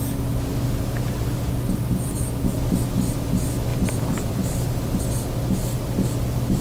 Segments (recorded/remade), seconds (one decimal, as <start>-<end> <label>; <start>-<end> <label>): 0.0-3.7 recorded; 3.7-5.0 remade; 5.0-6.6 recorded